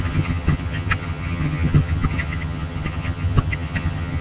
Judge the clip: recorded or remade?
remade